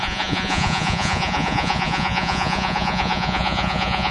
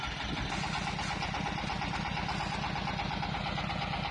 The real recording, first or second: second